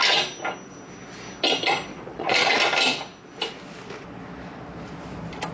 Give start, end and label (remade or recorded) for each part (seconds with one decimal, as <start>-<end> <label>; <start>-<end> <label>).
0.0-1.9 recorded; 1.9-2.6 remade; 2.6-5.5 recorded